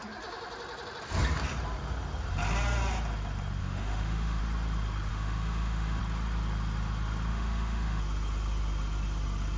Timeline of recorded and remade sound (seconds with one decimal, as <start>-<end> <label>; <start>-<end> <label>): 0.0-3.6 recorded; 3.6-4.4 remade; 4.4-5.1 recorded; 5.1-6.0 remade; 6.0-7.3 recorded; 7.3-8.0 remade; 8.0-9.6 recorded